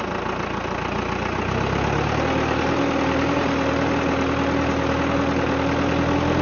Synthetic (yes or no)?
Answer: no